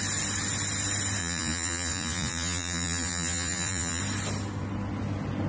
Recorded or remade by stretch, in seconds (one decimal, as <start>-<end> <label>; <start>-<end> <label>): 0.0-1.2 recorded; 1.2-4.0 remade; 4.0-5.5 recorded